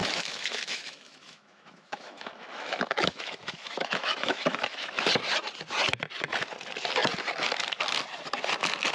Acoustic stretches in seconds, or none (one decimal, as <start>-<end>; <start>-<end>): 5.1-8.9